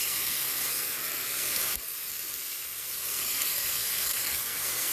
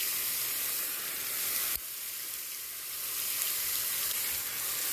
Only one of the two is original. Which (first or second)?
second